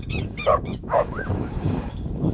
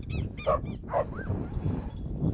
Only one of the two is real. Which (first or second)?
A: second